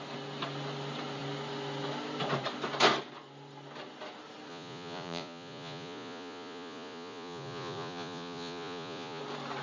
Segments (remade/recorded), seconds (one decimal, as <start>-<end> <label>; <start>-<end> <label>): 0.0-4.5 recorded; 4.5-9.2 remade; 9.2-9.6 recorded